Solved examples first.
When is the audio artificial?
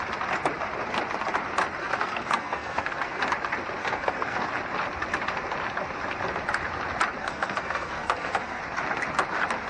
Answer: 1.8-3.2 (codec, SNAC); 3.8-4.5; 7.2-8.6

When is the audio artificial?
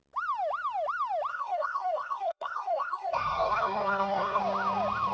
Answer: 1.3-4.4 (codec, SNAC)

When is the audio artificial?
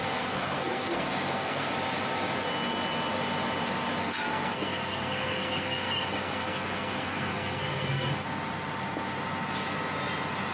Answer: 0.0-1.7 (codec, SNAC); 4.0-8.1